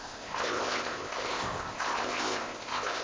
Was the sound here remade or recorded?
remade